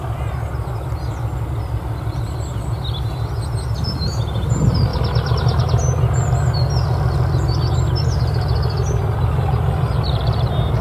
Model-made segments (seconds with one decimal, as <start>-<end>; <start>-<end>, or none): 9.0-10.2